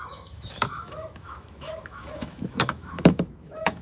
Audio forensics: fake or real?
fake